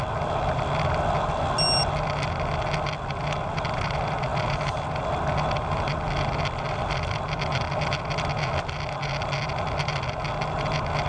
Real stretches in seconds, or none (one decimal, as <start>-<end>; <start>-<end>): 0.0-11.1